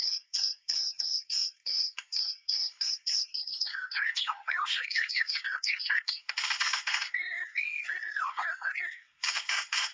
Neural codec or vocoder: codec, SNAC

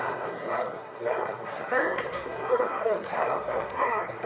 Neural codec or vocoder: codec, SNAC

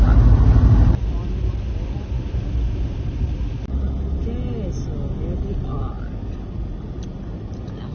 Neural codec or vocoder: none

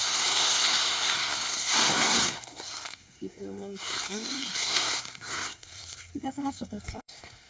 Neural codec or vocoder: codec, SNAC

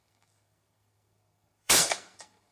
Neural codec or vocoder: codec, SNAC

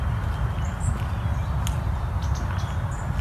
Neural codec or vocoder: none